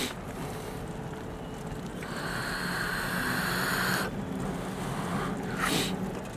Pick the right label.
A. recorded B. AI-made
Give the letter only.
A